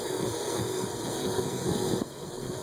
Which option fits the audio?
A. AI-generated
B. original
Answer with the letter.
A